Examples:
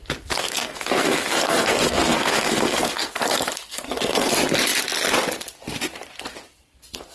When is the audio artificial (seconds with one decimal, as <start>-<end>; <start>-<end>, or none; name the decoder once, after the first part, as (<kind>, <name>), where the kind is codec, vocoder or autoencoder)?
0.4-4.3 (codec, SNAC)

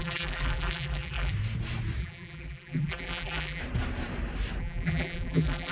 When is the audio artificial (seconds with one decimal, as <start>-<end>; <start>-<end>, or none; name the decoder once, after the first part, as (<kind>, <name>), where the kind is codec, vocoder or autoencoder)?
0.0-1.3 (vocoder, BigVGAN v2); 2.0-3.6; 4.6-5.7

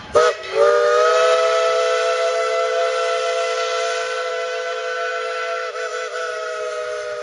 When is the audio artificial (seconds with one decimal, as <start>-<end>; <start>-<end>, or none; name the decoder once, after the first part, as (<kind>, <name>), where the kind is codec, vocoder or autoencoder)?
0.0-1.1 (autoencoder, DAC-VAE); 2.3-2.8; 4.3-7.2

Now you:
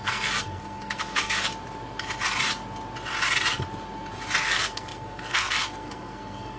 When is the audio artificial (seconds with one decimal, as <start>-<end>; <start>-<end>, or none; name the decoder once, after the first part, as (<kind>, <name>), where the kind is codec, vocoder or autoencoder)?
0.0-1.5 (codec, SNAC); 4.4-6.6

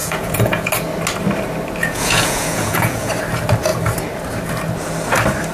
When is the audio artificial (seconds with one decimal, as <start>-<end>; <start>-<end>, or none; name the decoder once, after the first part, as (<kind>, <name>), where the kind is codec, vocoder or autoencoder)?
0.0-0.7 (vocoder, Vocos); 1.8-3.1